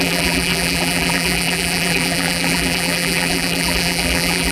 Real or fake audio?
fake